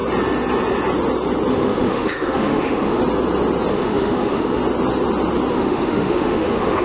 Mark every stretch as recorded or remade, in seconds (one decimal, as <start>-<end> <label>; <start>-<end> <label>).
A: 0.0-1.5 recorded; 1.5-3.0 remade; 3.0-3.7 recorded; 3.7-4.6 remade; 4.6-5.5 recorded; 5.5-6.8 remade